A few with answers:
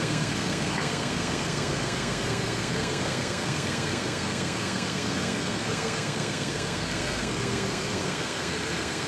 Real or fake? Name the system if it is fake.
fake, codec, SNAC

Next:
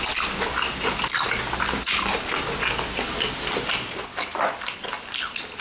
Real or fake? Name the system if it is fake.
real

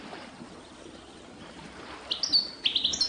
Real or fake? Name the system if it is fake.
real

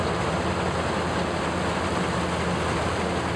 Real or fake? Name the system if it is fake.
real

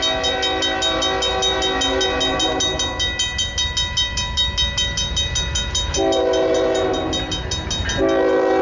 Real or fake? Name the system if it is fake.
real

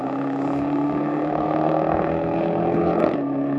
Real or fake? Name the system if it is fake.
fake, codec, SNAC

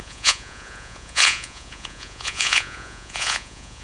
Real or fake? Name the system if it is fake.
fake, vocoder, Vocos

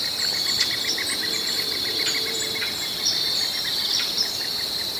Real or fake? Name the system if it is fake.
fake, vocoder, BigVGAN v2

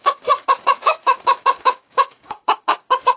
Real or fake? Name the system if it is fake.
fake, codec, DAC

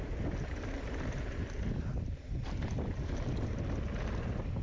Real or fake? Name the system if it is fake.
real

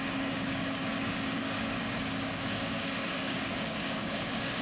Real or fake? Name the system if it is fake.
fake, codec, DAC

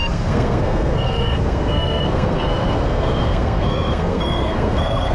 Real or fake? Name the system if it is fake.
fake, codec, SNAC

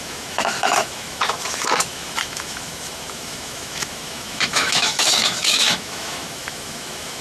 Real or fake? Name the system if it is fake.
fake, autoencoder, DAC-VAE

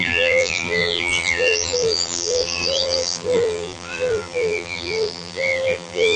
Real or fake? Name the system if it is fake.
fake, vocoder, BigVGAN v2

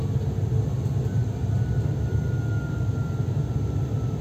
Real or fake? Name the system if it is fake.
real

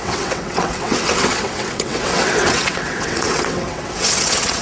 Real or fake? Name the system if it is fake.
fake, vocoder, WaveNeXt